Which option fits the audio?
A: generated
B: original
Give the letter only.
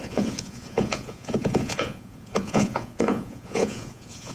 A